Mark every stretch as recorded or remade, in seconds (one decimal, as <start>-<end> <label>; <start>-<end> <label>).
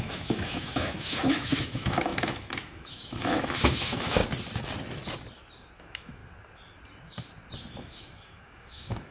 0.0-4.2 remade; 4.2-5.8 recorded; 5.8-6.2 remade; 6.2-7.7 recorded; 7.7-9.1 remade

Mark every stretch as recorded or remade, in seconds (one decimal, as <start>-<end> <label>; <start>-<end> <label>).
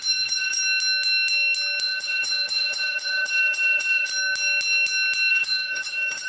0.0-0.6 remade; 0.6-1.8 recorded; 1.8-4.1 remade; 4.1-5.3 recorded; 5.3-6.3 remade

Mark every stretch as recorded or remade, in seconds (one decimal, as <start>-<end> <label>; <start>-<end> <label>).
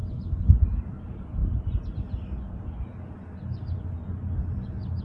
0.0-5.0 recorded